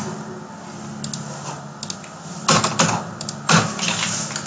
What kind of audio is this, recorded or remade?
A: recorded